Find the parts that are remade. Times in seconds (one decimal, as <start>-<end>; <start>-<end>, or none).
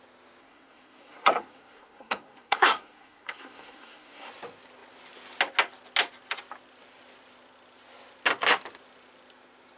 0.4-4.3